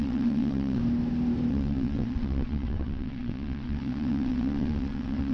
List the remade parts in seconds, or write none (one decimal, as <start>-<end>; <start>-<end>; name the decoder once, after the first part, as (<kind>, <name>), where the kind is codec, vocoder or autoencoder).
0.0-0.8 (vocoder, WaveNeXt); 1.5-5.3